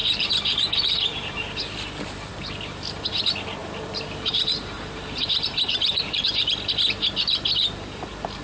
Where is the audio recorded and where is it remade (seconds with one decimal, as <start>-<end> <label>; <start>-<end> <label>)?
0.0-1.7 remade; 1.7-2.3 recorded; 2.3-3.2 remade; 3.2-3.6 recorded; 3.6-6.5 remade; 6.5-8.4 recorded